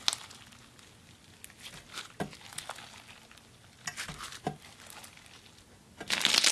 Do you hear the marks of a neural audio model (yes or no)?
no